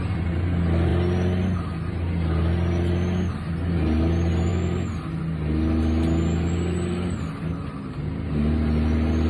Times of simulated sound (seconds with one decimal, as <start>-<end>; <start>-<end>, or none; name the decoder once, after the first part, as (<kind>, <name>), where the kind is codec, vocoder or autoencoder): 4.5-5.2 (vocoder, BigVGAN v2)